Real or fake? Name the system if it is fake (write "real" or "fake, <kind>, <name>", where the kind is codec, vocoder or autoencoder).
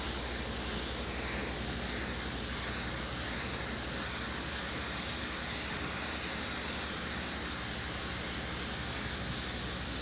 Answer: real